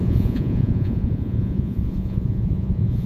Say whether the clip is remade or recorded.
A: remade